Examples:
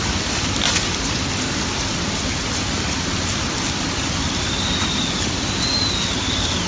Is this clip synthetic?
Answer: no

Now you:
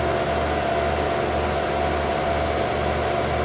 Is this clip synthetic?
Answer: no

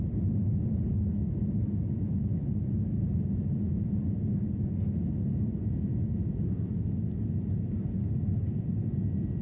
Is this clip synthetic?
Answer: no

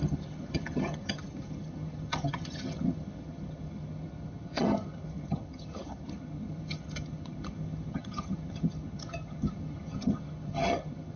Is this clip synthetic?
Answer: yes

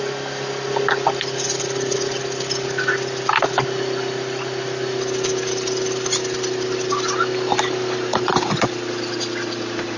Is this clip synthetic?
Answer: no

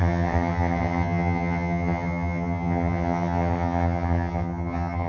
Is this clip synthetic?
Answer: yes